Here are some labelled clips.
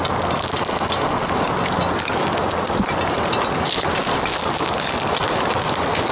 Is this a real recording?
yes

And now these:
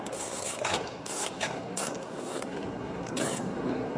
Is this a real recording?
no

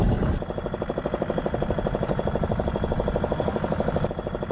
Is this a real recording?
yes